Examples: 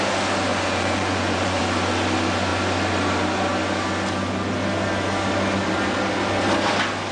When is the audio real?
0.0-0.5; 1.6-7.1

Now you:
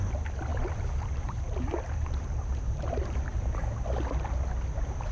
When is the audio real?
0.0-0.5; 3.6-5.1

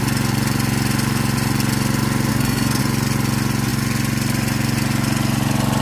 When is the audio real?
0.0-2.3; 2.8-5.8

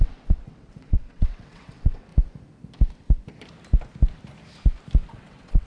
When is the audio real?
2.1-5.1